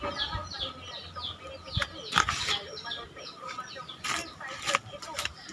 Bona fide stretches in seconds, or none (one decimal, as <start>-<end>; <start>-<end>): 0.0-5.5